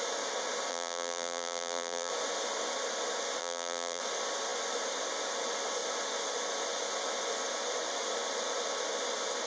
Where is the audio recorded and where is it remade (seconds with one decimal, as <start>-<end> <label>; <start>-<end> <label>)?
0.0-0.7 recorded; 0.7-2.1 remade; 2.1-3.4 recorded; 3.4-4.0 remade; 4.0-9.5 recorded